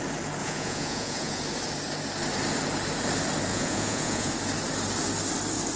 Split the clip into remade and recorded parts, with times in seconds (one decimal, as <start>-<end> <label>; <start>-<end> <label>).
0.0-0.4 recorded; 0.4-1.4 remade; 1.4-3.5 recorded; 3.5-4.3 remade; 4.3-5.8 recorded